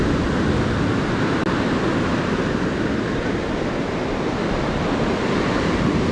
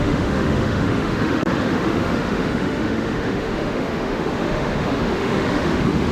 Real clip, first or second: first